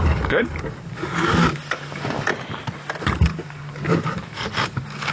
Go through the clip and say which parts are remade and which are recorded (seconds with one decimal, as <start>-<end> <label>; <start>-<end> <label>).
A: 0.0-2.3 remade; 2.3-3.0 recorded; 3.0-5.1 remade